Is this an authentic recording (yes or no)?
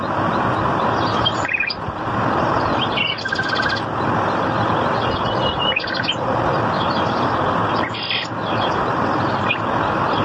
yes